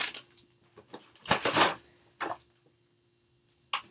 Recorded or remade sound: recorded